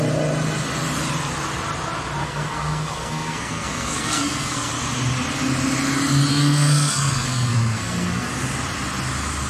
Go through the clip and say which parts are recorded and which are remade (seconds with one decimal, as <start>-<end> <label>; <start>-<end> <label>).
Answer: 0.0-2.2 recorded; 2.2-4.7 remade; 4.7-6.3 recorded; 6.3-8.3 remade; 8.3-9.5 recorded